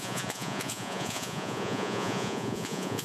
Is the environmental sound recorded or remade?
remade